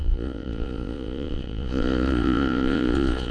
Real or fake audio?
fake